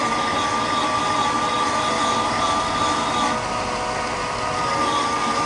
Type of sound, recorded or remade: recorded